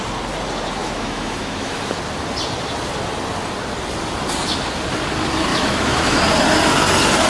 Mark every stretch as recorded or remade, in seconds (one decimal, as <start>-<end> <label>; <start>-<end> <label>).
0.0-0.8 recorded; 0.8-2.0 remade; 2.0-5.5 recorded; 5.5-6.2 remade; 6.2-7.3 recorded